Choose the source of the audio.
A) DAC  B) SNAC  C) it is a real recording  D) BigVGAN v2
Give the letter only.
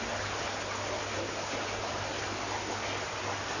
C